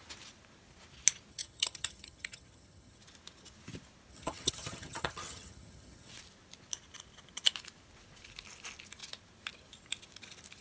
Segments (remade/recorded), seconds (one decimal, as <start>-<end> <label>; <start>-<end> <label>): 0.0-1.3 recorded; 1.3-3.0 remade; 3.0-4.1 recorded; 4.1-6.1 remade; 6.1-10.6 recorded